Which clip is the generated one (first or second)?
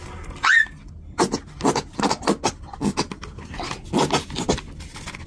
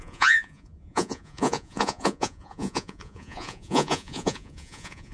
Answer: second